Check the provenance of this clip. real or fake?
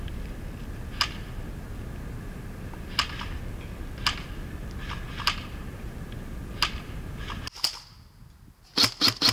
real